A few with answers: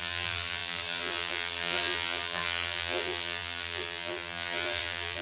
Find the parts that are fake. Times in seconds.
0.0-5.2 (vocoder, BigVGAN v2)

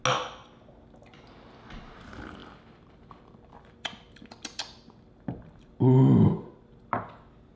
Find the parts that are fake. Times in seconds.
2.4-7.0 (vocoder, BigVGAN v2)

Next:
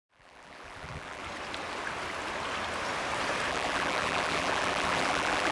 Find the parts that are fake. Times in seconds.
0.0-1.2 (vocoder, BigVGAN v2); 3.5-5.5

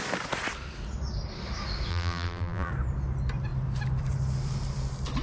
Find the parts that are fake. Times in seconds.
1.9-2.7 (vocoder, BigVGAN v2)

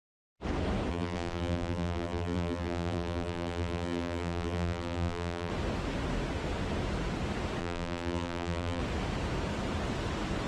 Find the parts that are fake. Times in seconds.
0.9-5.5 (vocoder, BigVGAN v2); 7.6-8.8